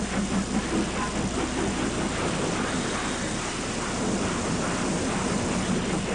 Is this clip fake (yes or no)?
no